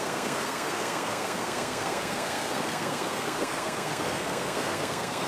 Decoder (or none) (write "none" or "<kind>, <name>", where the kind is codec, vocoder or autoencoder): codec, SNAC